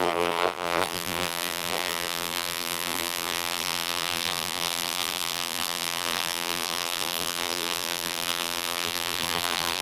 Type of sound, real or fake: fake